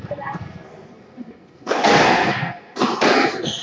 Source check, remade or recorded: remade